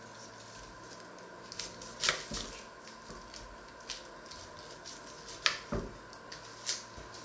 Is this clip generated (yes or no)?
no